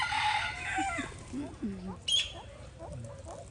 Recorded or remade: recorded